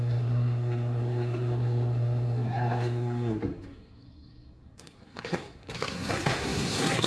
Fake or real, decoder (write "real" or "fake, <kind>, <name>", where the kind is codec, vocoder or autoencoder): fake, codec, SNAC